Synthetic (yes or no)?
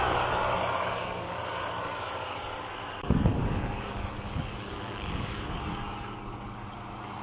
yes